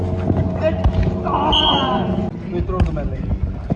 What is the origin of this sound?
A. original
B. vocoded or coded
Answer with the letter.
A